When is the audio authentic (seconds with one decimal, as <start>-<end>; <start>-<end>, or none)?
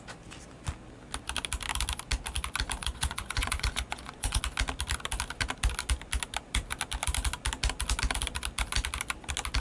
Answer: 0.0-2.8; 4.4-9.6